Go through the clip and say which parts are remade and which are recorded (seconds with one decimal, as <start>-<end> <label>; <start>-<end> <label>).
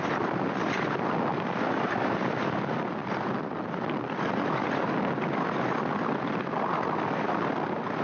0.0-8.0 recorded